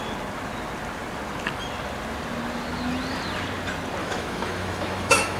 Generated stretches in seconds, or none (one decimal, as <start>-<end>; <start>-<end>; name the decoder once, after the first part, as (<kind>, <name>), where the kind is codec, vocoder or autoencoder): 4.0-5.4 (autoencoder, DAC-VAE)